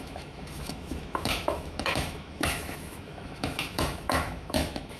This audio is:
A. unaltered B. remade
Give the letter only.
B